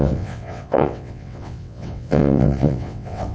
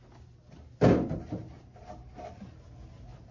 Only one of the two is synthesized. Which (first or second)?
first